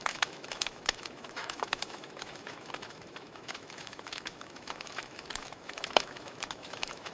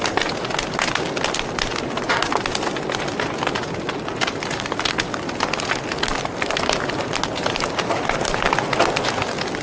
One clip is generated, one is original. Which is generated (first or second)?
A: first